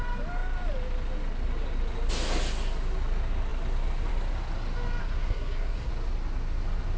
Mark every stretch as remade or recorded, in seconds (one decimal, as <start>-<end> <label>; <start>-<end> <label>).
0.0-5.0 recorded; 5.0-5.9 remade; 5.9-7.0 recorded